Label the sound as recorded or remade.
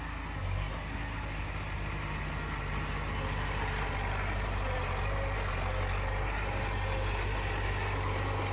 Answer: recorded